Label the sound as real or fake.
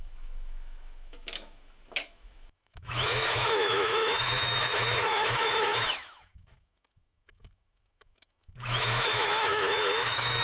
fake